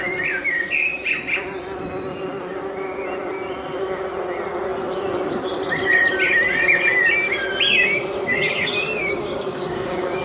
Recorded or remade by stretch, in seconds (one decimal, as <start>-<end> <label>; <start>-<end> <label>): 0.0-9.0 recorded; 9.0-10.2 remade